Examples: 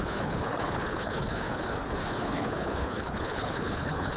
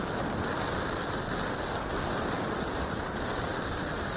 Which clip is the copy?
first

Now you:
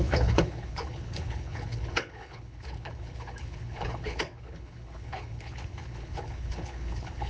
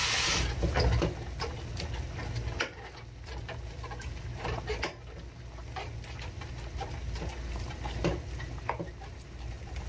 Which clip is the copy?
first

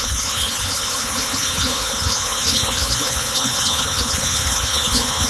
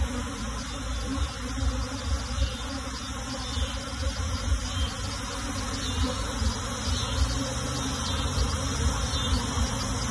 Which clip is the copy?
first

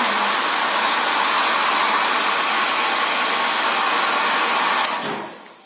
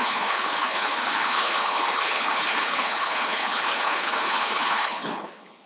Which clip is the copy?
second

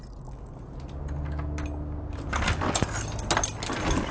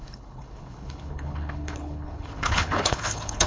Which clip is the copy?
second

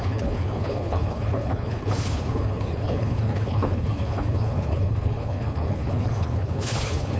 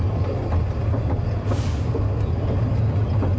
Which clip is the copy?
first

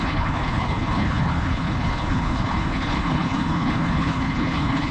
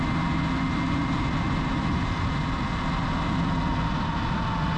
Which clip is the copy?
first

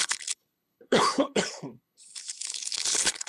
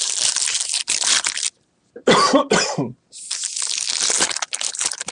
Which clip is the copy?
first